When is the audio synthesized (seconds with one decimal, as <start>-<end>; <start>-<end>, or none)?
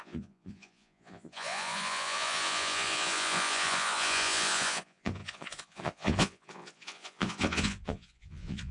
0.0-8.7